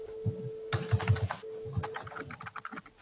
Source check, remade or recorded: recorded